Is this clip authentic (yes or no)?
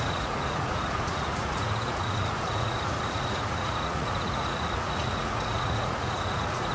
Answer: no